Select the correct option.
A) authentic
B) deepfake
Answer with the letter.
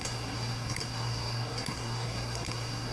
B